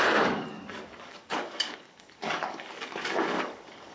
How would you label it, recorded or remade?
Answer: remade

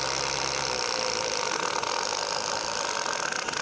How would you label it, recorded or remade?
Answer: recorded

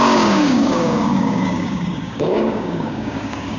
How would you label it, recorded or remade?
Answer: remade